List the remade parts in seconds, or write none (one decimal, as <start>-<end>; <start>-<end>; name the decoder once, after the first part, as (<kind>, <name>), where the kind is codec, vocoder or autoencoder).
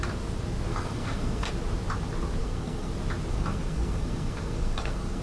0.7-1.5 (codec, SNAC); 2.4-2.9; 3.3-5.2